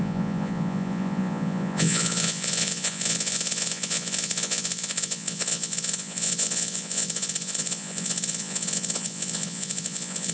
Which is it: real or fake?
fake